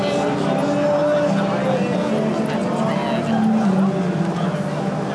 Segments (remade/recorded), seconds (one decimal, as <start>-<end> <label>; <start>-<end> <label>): 0.0-5.1 recorded

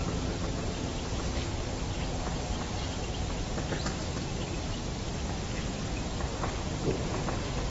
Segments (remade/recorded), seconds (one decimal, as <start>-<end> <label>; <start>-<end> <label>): 0.0-2.3 recorded; 2.3-3.2 remade; 3.2-4.0 recorded; 4.0-6.5 remade; 6.5-7.7 recorded

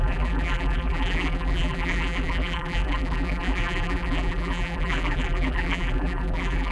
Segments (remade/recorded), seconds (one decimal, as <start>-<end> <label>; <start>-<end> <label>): 0.0-6.7 remade

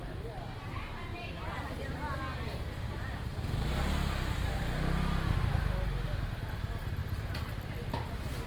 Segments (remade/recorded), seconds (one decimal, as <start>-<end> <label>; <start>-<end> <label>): 0.0-1.1 recorded; 1.1-2.0 remade; 2.0-2.5 recorded; 2.5-4.6 remade; 4.6-7.0 recorded; 7.0-7.5 remade; 7.5-8.5 recorded